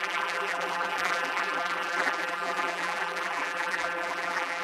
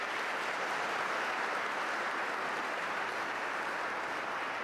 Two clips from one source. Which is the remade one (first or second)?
first